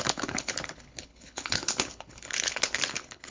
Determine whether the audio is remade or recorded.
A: remade